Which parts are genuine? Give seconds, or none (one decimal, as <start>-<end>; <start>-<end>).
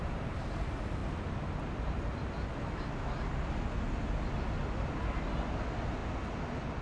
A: 0.0-2.5; 3.1-6.8